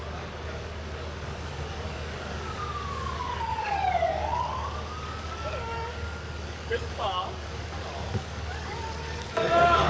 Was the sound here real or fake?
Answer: fake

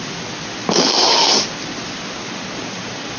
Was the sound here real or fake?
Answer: real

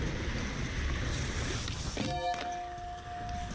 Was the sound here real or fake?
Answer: real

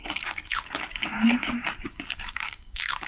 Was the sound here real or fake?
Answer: fake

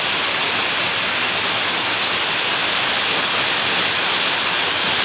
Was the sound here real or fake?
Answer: real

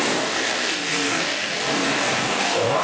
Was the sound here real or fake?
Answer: fake